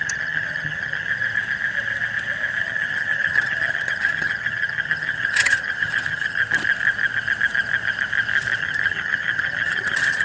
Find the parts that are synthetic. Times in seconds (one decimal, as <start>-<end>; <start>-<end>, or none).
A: 0.0-1.1; 2.6-6.4; 8.6-10.2